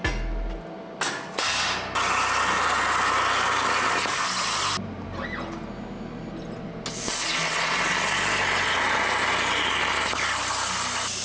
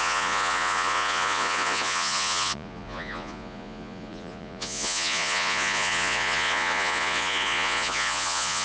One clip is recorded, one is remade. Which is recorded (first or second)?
first